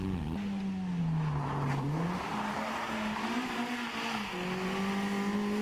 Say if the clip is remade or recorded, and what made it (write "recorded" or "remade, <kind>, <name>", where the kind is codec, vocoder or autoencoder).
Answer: recorded